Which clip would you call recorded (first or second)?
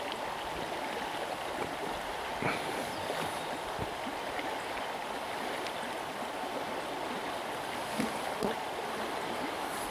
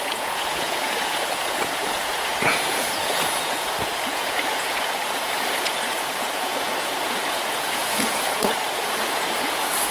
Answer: first